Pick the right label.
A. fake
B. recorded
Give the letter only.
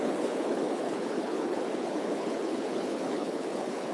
A